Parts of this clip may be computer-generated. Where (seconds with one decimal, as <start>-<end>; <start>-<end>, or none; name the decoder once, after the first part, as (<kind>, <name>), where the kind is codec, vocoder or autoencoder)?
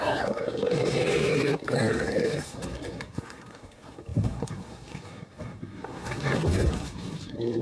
0.0-7.6 (codec, SNAC)